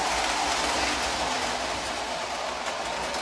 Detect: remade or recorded recorded